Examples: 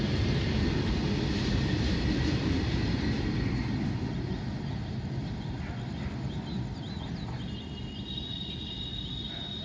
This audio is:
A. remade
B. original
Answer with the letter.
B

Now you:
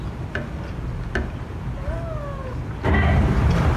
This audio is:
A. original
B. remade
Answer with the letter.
A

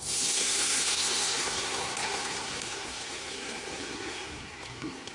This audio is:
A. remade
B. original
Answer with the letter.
A